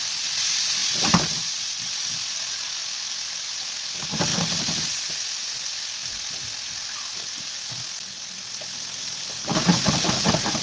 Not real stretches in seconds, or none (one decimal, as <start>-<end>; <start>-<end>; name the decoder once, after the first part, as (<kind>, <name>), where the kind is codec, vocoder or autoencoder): 9.7-10.2 (vocoder, BigVGAN v2)